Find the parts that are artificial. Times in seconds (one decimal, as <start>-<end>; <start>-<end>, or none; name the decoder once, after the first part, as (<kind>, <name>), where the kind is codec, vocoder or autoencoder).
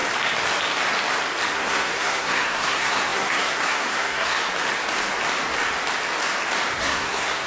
1.5-4.4 (codec, SNAC); 6.8-7.5